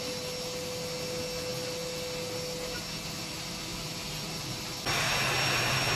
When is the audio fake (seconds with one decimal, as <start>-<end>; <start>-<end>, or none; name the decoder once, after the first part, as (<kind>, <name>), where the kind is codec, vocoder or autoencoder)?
none